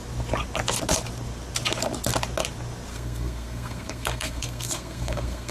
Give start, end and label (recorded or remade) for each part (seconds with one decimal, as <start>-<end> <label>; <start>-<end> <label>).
0.0-2.9 recorded; 2.9-5.5 remade